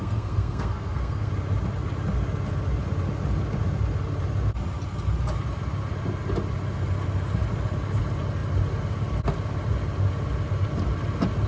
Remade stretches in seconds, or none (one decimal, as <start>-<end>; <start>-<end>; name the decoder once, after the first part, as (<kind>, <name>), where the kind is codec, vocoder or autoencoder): 0.0-1.3 (codec, SNAC)